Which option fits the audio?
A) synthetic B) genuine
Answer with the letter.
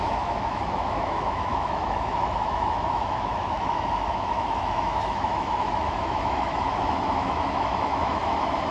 A